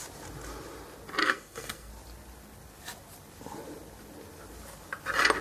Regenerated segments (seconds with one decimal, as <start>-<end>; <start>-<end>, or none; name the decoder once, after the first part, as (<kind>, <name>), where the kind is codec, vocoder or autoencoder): 1.2-1.9 (codec, SNAC)